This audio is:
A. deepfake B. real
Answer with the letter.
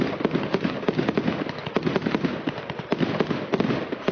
B